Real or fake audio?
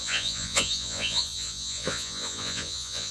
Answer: fake